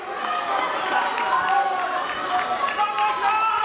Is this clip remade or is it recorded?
recorded